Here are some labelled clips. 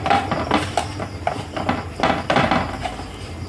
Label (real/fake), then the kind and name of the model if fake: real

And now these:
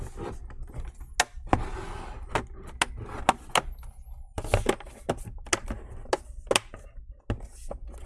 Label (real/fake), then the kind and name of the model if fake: real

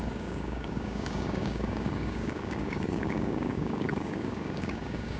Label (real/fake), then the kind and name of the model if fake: fake, codec, DAC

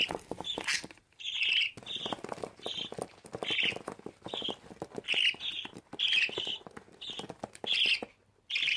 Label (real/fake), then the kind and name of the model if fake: real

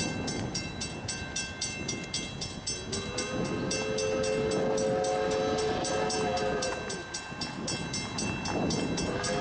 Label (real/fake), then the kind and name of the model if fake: real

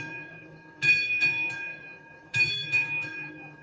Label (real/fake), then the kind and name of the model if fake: fake, autoencoder, DAC-VAE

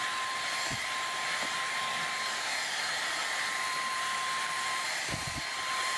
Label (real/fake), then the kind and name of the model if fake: fake, vocoder, BigVGAN v2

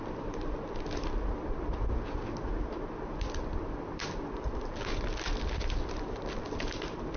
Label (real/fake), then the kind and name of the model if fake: real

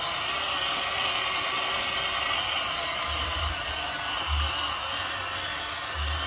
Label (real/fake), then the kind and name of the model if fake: real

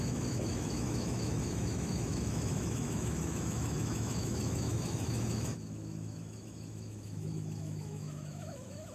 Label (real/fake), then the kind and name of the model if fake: fake, autoencoder, DAC-VAE